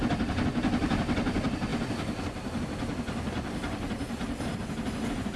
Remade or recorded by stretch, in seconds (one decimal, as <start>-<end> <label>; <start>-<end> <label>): 0.0-5.4 recorded